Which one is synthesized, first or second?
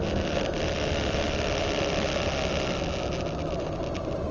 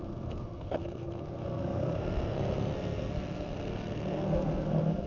second